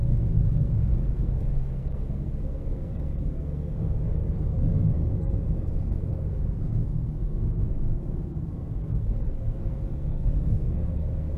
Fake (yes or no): yes